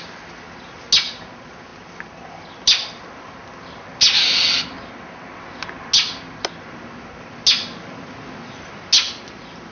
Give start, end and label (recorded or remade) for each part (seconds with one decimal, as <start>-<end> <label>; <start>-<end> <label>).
0.0-9.7 recorded